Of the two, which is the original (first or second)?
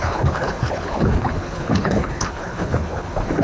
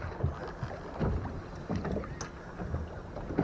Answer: second